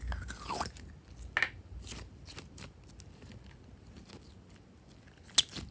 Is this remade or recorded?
recorded